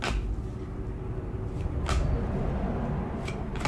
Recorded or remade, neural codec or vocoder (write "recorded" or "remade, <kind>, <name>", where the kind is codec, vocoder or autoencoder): recorded